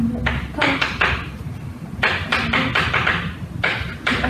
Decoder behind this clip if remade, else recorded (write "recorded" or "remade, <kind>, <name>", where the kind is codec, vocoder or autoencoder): recorded